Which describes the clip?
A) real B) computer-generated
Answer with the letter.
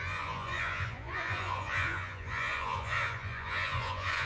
B